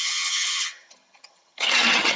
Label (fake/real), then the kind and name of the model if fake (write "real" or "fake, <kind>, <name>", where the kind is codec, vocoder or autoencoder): fake, vocoder, HiFi-GAN